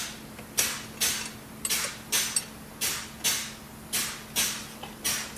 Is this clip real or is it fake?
real